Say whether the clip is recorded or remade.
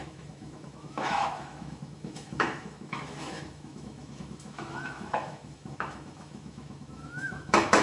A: remade